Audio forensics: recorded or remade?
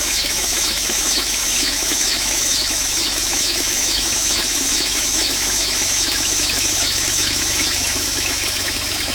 remade